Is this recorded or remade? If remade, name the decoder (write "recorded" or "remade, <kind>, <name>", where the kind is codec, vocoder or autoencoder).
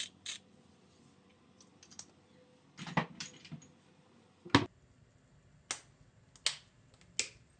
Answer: recorded